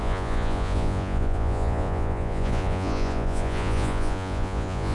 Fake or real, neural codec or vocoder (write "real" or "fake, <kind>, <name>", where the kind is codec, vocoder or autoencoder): fake, vocoder, Vocos